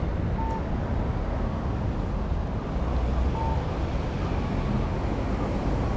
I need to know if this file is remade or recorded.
recorded